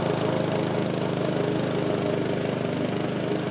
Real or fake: real